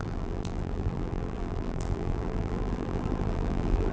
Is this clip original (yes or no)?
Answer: no